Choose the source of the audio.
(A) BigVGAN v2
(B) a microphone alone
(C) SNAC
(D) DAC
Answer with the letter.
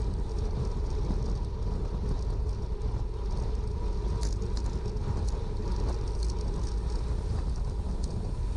B